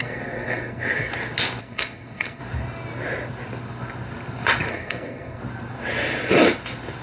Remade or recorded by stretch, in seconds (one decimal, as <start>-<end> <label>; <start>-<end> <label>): 0.0-1.1 remade; 1.1-1.6 recorded; 1.6-2.4 remade; 2.4-4.7 recorded; 4.7-5.4 remade; 5.4-7.0 recorded